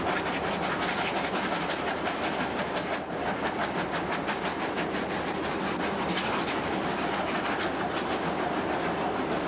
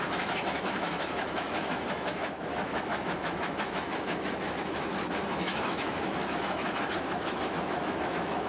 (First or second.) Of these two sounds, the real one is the first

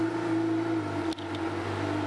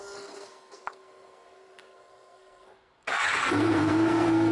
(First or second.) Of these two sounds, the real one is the first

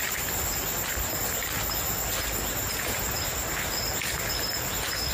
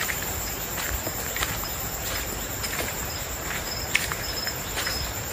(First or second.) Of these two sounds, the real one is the first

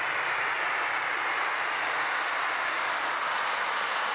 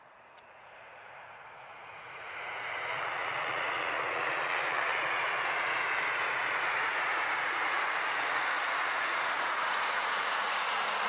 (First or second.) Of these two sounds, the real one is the first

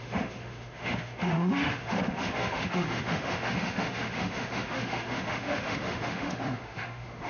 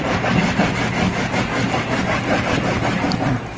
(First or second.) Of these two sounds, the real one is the second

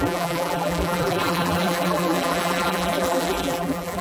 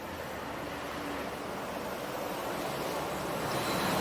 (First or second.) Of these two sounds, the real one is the second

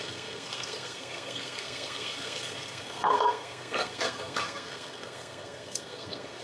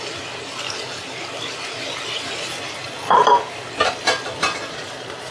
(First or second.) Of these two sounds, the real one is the second